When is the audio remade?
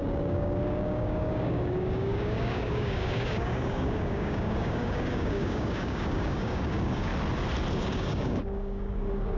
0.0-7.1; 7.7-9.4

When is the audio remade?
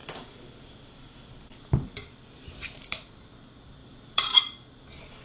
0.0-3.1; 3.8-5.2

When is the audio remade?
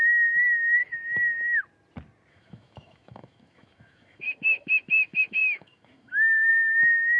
0.0-0.8; 2.3-6.5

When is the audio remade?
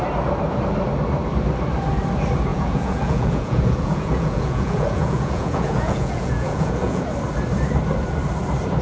2.5-7.0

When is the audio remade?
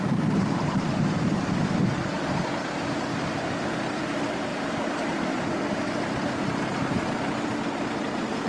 0.0-8.5